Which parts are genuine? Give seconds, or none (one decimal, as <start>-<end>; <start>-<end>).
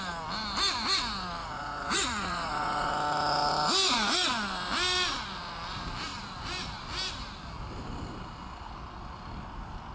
0.0-1.4; 2.9-9.9